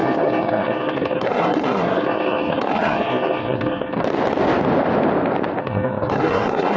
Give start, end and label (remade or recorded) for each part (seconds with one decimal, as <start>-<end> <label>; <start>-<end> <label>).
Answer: 0.0-4.0 remade; 4.0-5.6 recorded; 5.6-6.8 remade